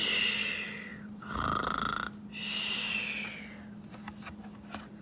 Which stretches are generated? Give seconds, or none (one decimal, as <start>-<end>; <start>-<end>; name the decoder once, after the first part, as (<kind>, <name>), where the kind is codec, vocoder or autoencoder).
none